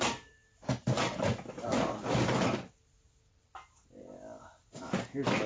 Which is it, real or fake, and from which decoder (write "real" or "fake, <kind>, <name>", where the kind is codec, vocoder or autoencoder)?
real